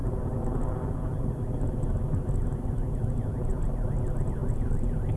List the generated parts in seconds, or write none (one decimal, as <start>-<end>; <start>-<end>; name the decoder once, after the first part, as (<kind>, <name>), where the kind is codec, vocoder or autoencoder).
none